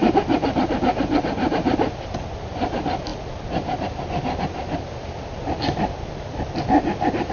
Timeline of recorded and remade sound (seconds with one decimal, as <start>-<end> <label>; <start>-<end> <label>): 0.0-7.3 recorded